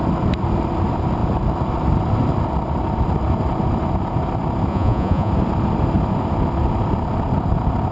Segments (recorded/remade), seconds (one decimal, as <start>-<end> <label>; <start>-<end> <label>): 0.0-4.7 recorded; 4.7-5.3 remade; 5.3-7.9 recorded